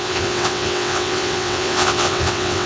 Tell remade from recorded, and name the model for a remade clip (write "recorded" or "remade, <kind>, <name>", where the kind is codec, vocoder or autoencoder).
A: remade, vocoder, WaveNeXt